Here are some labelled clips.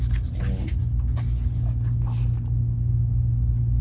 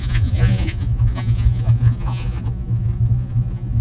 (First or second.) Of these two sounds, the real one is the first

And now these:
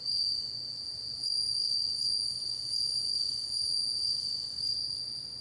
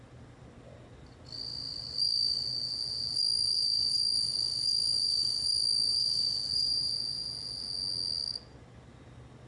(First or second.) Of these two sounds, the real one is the second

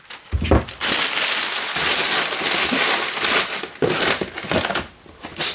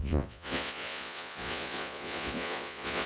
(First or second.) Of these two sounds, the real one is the first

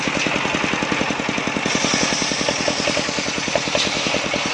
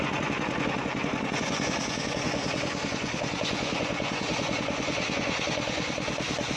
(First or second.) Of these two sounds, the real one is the first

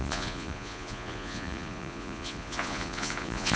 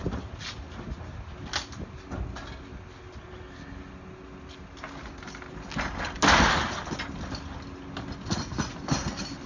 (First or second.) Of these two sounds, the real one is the second